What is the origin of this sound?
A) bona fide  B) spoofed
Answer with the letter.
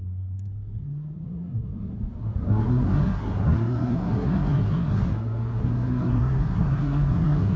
B